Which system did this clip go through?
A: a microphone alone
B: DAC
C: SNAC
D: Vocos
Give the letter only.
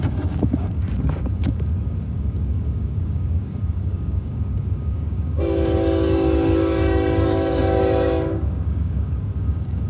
B